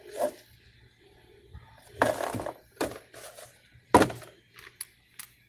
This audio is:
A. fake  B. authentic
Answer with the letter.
B